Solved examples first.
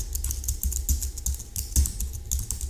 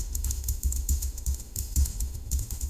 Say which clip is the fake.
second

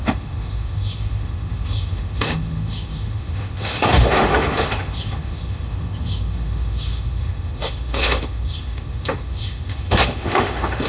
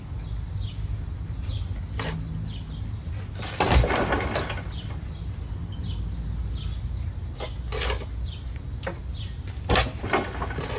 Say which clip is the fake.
first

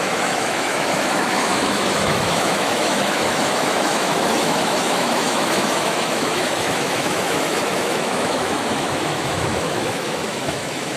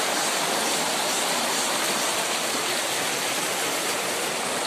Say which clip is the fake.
first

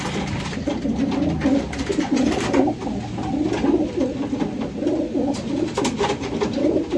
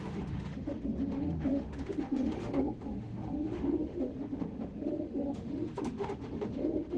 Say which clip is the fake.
second